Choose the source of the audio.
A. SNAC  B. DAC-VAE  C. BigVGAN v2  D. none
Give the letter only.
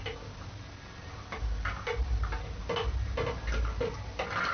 D